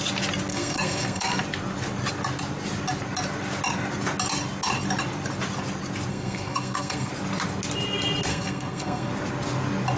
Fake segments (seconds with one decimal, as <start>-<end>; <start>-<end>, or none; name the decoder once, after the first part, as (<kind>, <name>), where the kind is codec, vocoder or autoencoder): 0.5-1.4 (codec, SNAC); 6.1-7.1; 8.3-9.1

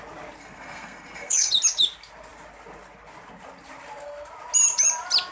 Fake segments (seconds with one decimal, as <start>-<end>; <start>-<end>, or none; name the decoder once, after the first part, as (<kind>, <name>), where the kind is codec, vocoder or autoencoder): 0.4-1.5 (codec, SNAC)

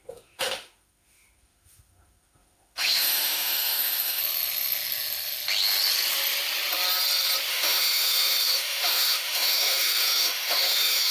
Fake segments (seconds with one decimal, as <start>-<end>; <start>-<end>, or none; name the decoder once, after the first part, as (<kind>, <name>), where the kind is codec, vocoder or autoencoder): 0.0-4.2 (autoencoder, DAC-VAE); 7.5-11.1

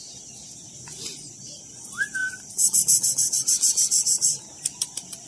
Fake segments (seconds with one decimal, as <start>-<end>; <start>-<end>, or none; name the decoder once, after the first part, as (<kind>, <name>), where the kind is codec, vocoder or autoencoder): none

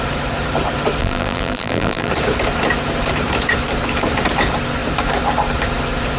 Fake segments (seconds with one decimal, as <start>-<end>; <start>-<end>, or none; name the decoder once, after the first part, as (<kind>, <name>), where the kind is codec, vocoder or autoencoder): 1.0-2.1 (vocoder, BigVGAN v2)

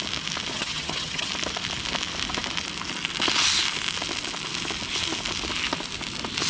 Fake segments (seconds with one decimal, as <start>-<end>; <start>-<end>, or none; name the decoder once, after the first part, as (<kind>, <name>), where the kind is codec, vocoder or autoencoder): 0.5-1.3 (vocoder, HiFi-GAN)

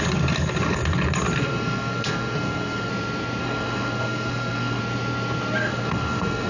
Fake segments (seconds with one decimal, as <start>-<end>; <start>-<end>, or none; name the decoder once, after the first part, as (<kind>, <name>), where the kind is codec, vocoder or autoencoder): 1.4-2.9 (codec, SNAC); 3.4-4.8; 5.6-6.5